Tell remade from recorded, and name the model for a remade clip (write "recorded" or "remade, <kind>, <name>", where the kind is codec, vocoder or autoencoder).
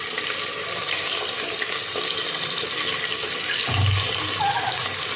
recorded